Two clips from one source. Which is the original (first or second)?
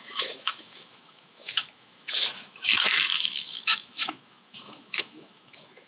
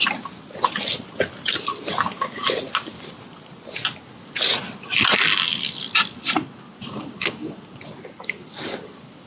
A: second